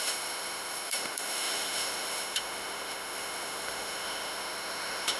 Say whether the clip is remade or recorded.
remade